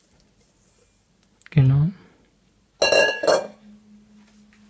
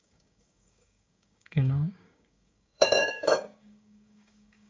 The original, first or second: first